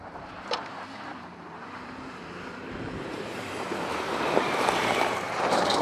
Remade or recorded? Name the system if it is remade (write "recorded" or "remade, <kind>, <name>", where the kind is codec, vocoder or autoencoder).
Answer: remade, vocoder, BigVGAN v2